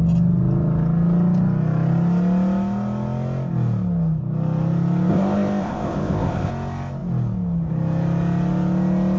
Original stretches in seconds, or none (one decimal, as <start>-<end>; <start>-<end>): 0.0-5.1; 6.5-9.2